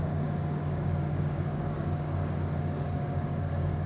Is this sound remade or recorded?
remade